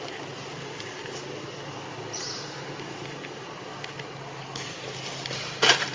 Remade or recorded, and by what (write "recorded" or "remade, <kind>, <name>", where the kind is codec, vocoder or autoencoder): recorded